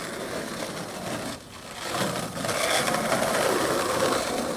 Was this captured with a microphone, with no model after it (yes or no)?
yes